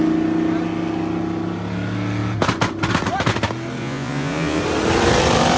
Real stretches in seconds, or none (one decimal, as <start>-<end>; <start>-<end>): 0.0-3.8; 4.6-5.6